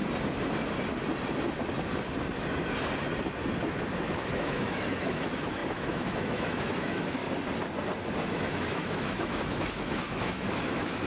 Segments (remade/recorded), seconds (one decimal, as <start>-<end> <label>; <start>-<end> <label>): 0.0-4.0 recorded; 4.0-7.2 remade; 7.2-8.3 recorded; 8.3-11.1 remade